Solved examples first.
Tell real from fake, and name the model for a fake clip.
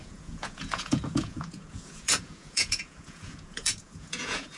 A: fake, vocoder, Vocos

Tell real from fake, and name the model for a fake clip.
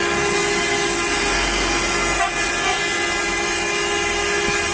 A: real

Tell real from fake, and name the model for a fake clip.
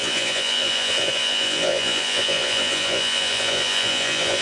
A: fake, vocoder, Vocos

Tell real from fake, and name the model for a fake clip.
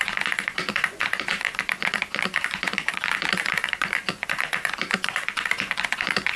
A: fake, vocoder, Vocos